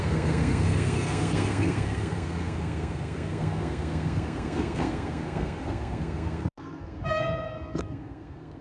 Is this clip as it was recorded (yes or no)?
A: no